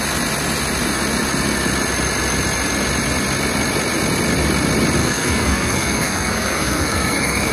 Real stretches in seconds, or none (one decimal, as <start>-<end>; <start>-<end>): 0.0-5.0